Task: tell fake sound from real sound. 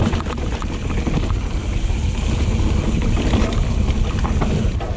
real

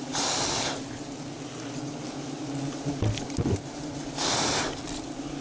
real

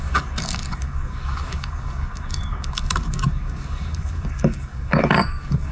fake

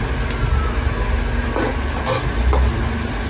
real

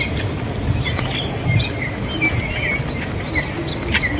real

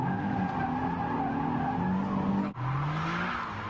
real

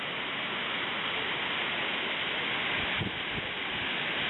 real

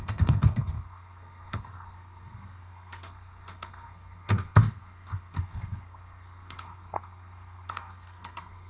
fake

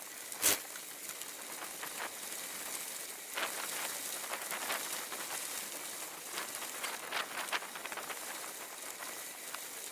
real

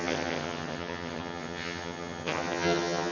fake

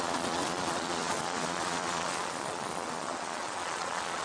fake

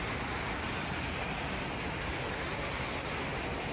real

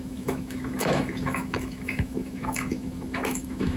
fake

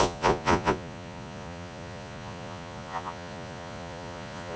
fake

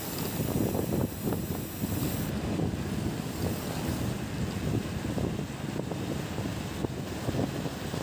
real